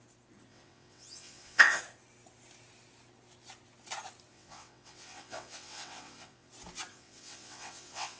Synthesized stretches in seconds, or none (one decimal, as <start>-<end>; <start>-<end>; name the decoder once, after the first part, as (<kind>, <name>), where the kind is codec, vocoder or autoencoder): 0.5-1.8 (vocoder, WaveNeXt); 4.3-6.5; 6.9-8.2